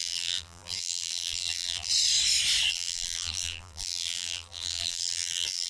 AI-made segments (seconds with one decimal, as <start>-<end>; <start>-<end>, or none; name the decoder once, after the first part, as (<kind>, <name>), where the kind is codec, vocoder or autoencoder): 0.0-1.9 (vocoder, BigVGAN v2); 2.7-5.7